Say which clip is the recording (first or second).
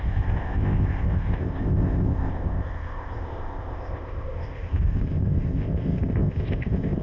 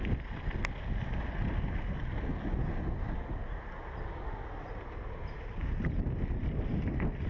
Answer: second